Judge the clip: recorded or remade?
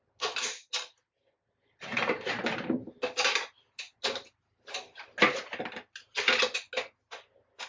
recorded